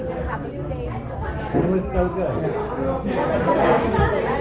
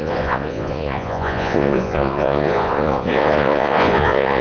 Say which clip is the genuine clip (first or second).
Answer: first